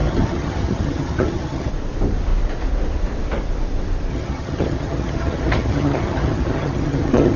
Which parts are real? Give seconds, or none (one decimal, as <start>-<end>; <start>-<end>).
1.7-4.1